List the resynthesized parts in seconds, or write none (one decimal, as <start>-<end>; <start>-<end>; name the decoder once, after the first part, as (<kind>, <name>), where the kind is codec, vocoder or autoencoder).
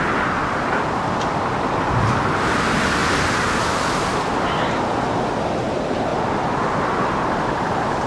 none